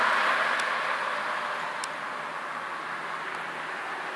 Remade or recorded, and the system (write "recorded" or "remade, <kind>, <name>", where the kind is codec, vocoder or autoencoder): recorded